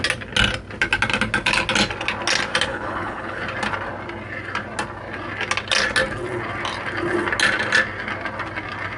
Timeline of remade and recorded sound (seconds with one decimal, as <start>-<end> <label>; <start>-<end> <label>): 0.0-2.7 recorded; 2.7-3.4 remade; 3.4-9.0 recorded